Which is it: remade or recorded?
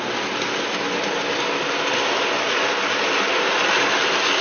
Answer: recorded